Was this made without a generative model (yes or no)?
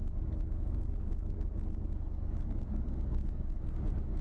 no